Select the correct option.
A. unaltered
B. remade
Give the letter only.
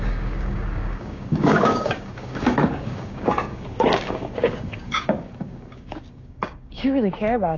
B